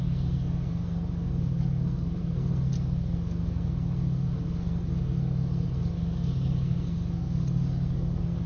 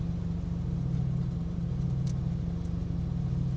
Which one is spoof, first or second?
first